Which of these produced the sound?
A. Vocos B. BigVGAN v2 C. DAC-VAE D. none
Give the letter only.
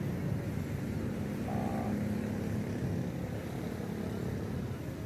D